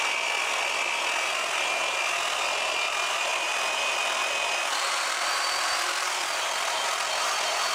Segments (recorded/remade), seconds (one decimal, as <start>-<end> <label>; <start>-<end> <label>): 0.0-3.3 recorded; 3.3-7.1 remade; 7.1-7.7 recorded